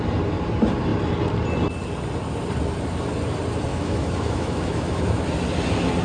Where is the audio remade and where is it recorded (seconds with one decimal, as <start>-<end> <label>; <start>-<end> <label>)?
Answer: 0.0-3.7 recorded; 3.7-5.2 remade; 5.2-6.0 recorded